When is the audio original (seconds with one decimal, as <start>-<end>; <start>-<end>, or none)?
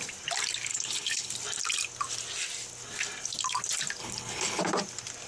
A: 0.0-0.7; 1.3-4.0; 4.6-5.3